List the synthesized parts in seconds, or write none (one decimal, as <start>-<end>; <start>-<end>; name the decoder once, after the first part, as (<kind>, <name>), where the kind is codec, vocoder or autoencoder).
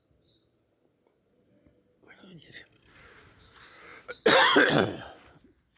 none